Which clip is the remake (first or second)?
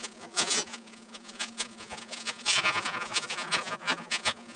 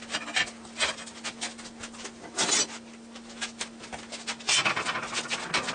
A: first